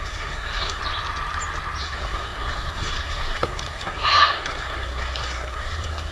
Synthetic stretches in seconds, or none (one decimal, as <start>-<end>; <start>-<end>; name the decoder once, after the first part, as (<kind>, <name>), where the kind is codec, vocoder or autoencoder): 0.0-0.8 (codec, SNAC); 1.8-6.1